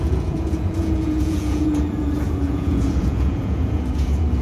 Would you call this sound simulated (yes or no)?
yes